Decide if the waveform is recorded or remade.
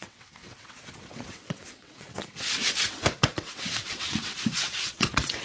remade